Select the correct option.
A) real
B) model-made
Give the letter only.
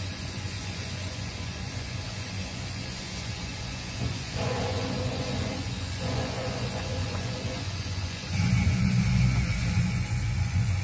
B